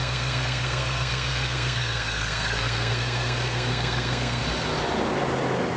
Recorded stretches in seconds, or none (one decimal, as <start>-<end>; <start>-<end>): 4.4-5.8